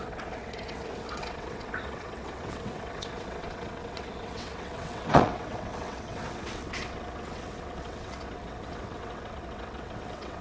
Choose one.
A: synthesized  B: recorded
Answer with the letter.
A